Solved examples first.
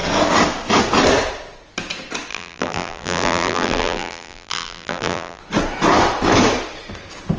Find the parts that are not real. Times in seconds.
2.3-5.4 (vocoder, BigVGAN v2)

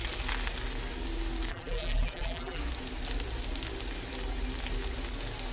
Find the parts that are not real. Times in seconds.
1.5-2.6 (vocoder, BigVGAN v2)